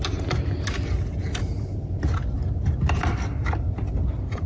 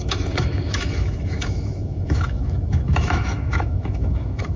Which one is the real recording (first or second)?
first